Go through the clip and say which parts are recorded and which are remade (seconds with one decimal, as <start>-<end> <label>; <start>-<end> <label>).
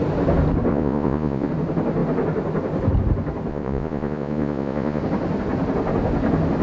0.0-0.7 recorded; 0.7-1.5 remade; 1.5-3.5 recorded; 3.5-5.0 remade; 5.0-6.6 recorded